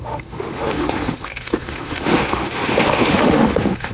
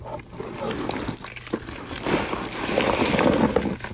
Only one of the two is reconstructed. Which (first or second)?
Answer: first